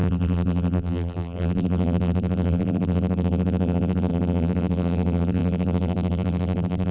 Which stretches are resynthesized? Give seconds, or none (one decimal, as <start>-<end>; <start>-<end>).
0.0-6.9